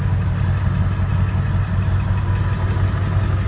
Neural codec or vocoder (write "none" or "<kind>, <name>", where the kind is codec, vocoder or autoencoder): none